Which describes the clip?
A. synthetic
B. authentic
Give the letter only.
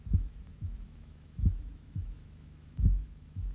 A